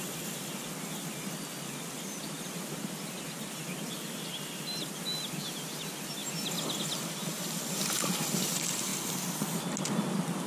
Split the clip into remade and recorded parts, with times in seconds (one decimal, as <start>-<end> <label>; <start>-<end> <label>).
0.0-10.5 recorded